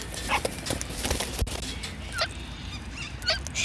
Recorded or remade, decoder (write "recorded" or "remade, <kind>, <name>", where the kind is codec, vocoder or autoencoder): recorded